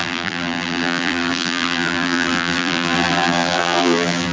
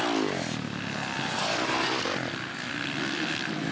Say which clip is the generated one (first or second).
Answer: first